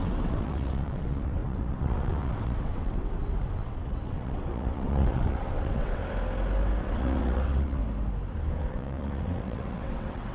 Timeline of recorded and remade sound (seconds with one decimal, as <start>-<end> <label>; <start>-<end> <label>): 0.0-6.0 remade; 6.0-6.8 recorded; 6.8-7.8 remade; 7.8-8.6 recorded; 8.6-10.3 remade